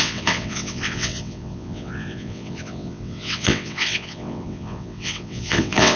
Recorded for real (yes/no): no